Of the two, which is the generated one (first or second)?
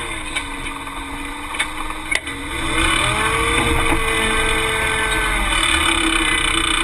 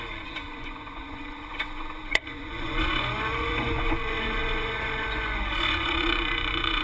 second